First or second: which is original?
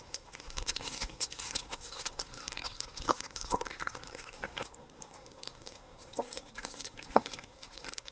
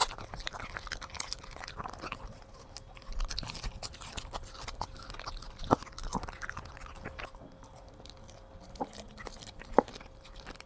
second